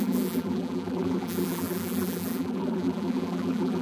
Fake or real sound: fake